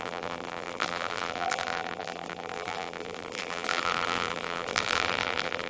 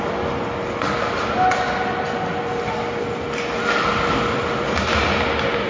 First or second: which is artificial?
first